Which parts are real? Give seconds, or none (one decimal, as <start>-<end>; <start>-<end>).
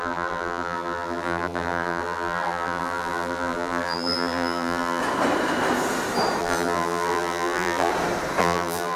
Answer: 5.0-6.4; 7.9-8.4